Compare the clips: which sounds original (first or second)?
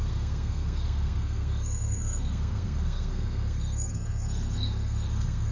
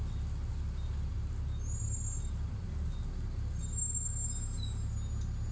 second